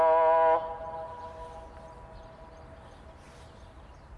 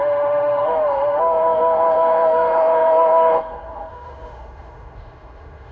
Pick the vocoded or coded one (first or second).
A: second